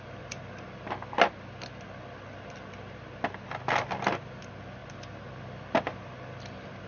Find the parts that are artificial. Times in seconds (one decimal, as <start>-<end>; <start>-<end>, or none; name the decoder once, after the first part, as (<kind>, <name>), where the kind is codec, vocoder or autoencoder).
none

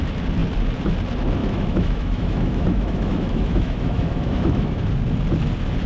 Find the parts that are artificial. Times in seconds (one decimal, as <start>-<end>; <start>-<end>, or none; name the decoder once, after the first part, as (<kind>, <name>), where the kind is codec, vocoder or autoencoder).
1.4-4.9 (autoencoder, DAC-VAE)